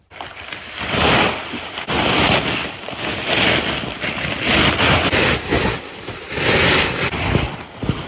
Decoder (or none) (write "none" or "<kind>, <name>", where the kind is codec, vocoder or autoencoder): vocoder, BigVGAN v2